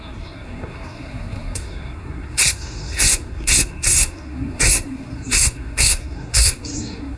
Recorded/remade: remade